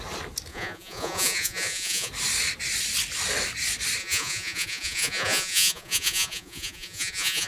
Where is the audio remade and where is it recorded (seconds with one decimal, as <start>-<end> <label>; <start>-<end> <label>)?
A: 0.0-0.5 recorded; 0.5-2.1 remade; 2.1-4.0 recorded; 4.0-7.5 remade